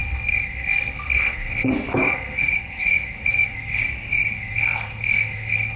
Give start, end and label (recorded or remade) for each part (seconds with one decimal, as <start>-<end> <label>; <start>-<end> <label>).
0.0-1.7 remade; 1.7-2.1 recorded; 2.1-3.8 remade; 3.8-4.3 recorded; 4.3-5.8 remade